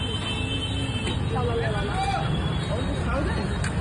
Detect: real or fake real